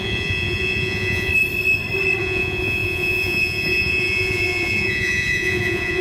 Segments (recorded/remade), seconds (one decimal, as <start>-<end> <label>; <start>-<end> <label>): 0.0-1.3 remade; 1.3-2.2 recorded; 2.2-6.0 remade